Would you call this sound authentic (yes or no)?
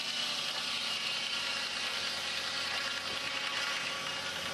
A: yes